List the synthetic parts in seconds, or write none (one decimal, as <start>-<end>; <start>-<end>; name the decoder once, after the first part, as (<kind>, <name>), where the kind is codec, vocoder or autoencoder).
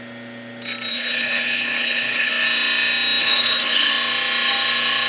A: 0.9-2.3 (codec, HILCodec); 3.2-3.9